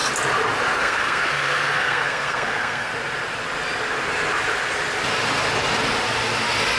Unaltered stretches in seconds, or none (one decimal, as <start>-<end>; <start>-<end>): 0.0-0.8; 2.9-6.8